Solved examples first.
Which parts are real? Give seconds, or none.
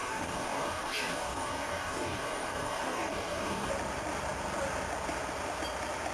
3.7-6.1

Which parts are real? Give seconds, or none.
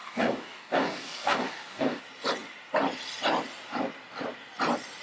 2.0-5.0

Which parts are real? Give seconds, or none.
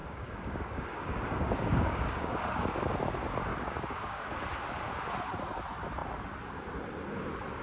2.7-3.5; 4.4-7.6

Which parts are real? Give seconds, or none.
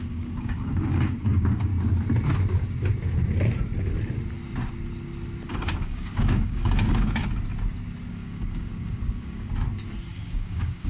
1.7-5.5; 7.2-8.1; 9.5-10.1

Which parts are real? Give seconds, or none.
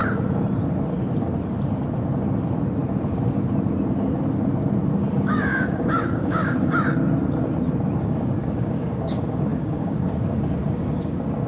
0.0-5.1; 7.0-8.0